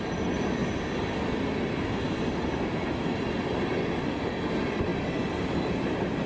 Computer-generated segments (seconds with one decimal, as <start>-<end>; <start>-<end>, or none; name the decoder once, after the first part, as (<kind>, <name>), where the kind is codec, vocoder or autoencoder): none